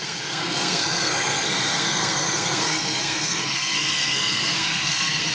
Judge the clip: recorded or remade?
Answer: remade